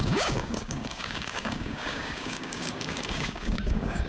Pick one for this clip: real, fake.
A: fake